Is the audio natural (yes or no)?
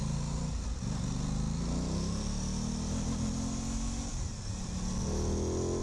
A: yes